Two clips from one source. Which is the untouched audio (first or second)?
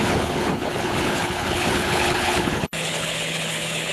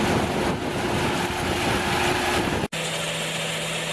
second